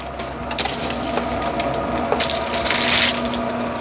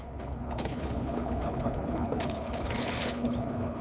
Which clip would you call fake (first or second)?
second